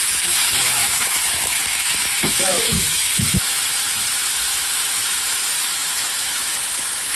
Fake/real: fake